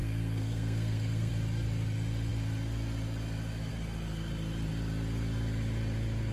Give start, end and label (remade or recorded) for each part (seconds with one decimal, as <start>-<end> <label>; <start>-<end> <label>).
0.0-1.3 remade; 1.3-6.3 recorded